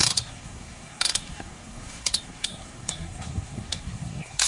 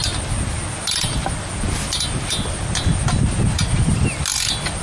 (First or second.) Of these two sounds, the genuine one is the second